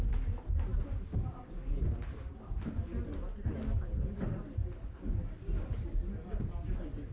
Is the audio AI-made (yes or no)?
no